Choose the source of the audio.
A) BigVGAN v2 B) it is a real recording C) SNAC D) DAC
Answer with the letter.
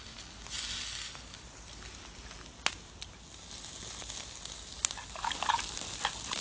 B